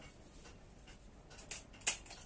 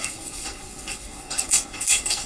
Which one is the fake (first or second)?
second